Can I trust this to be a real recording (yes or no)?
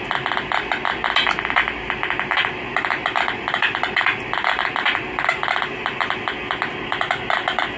yes